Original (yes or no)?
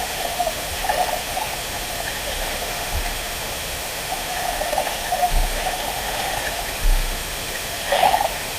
no